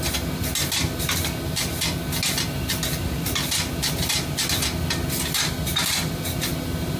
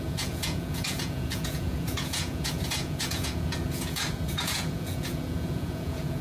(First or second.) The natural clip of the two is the first